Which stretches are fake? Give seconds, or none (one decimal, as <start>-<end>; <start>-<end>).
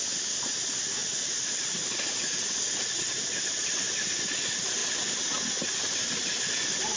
none